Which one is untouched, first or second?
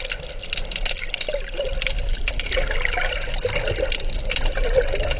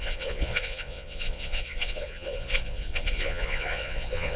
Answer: first